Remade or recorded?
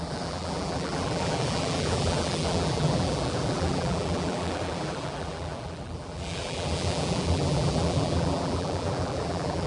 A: remade